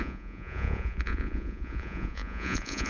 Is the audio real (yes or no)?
no